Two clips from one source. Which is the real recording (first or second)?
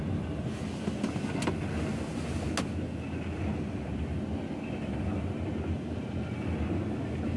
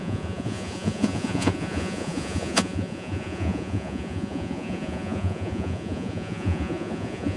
first